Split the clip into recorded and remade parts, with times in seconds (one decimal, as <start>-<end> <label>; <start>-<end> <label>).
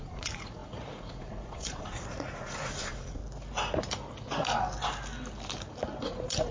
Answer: 0.0-3.2 remade; 3.2-6.0 recorded; 6.0-6.5 remade